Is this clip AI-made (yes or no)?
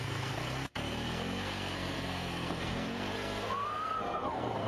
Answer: yes